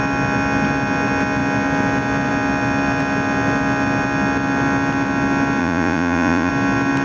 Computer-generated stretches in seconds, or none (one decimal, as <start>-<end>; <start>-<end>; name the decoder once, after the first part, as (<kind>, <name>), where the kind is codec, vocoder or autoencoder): 5.6-6.5 (vocoder, Vocos)